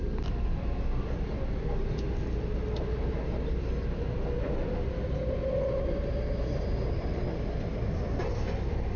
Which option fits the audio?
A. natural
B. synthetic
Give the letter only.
A